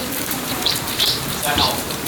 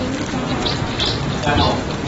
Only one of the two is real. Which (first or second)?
second